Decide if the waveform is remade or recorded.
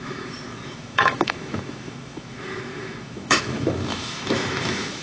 remade